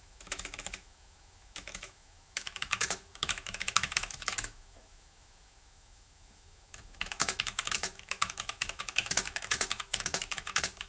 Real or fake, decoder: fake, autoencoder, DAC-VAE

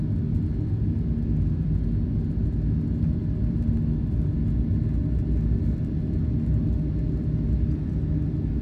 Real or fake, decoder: real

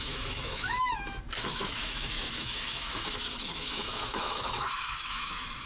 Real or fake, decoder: fake, autoencoder, DAC-VAE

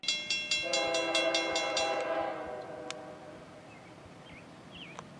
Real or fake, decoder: real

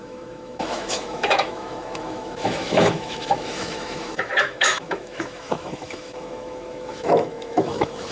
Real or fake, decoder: fake, autoencoder, DAC-VAE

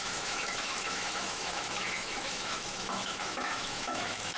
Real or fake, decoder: fake, autoencoder, DAC-VAE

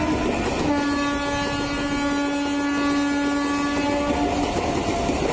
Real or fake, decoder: real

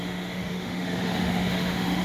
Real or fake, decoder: fake, autoencoder, DAC-VAE